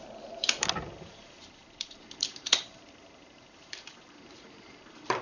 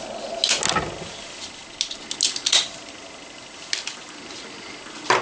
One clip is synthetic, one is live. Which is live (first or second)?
second